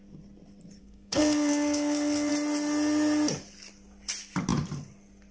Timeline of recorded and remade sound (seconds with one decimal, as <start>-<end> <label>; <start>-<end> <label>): 0.0-0.8 recorded; 0.8-2.3 remade; 2.3-5.3 recorded